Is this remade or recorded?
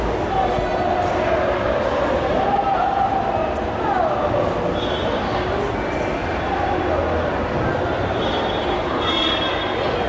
recorded